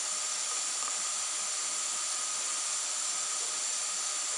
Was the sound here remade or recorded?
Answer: recorded